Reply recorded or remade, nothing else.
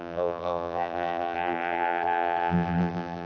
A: remade